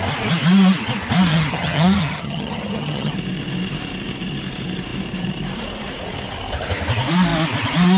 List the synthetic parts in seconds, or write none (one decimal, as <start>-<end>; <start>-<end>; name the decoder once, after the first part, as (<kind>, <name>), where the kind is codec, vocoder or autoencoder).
1.3-3.1 (vocoder, HiFi-GAN)